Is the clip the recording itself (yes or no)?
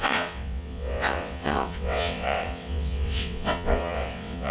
no